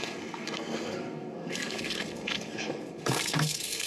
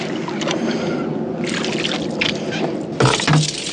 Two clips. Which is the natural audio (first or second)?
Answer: second